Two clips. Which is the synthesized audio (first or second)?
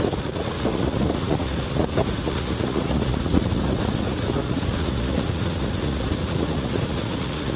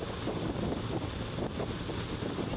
first